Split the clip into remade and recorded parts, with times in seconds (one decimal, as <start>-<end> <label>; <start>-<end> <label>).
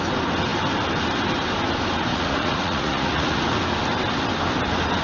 0.0-2.1 recorded; 2.1-3.4 remade; 3.4-5.0 recorded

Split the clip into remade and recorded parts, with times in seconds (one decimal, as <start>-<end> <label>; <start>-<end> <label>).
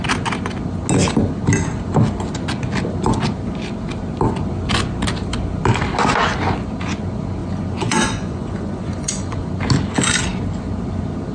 0.0-7.4 recorded; 7.4-9.5 remade; 9.5-11.3 recorded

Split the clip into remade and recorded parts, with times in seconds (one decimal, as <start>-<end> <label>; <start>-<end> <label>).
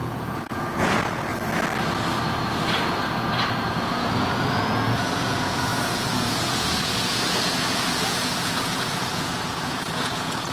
0.0-1.3 remade; 1.3-3.6 recorded; 3.6-10.5 remade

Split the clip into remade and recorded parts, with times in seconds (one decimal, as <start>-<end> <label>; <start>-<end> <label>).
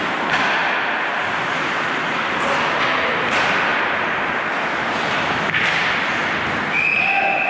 0.0-7.5 recorded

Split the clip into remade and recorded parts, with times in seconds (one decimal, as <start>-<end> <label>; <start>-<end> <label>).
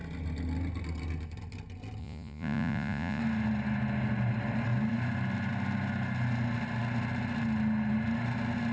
0.0-2.0 recorded; 2.0-3.2 remade; 3.2-8.7 recorded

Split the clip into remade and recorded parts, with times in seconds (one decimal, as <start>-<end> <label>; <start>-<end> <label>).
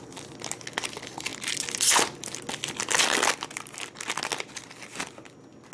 0.0-5.7 recorded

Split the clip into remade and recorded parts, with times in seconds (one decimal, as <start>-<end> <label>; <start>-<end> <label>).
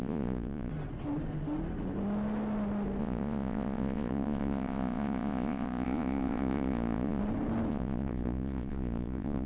0.0-0.7 remade; 0.7-3.0 recorded; 3.0-7.2 remade; 7.2-7.7 recorded; 7.7-9.5 remade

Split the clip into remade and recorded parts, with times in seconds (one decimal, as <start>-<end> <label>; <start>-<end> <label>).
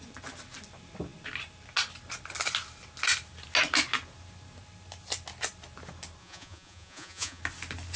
0.0-6.2 recorded; 6.2-7.4 remade; 7.4-8.0 recorded